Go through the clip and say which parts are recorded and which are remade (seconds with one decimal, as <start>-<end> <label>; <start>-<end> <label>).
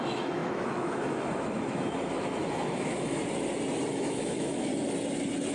0.0-3.2 remade; 3.2-3.9 recorded; 3.9-4.7 remade; 4.7-5.5 recorded